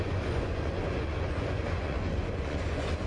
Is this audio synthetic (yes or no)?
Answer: yes